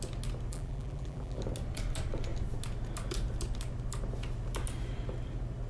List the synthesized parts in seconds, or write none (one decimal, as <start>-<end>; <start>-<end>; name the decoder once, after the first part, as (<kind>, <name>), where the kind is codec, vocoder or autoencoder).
0.5-1.4 (vocoder, BigVGAN v2)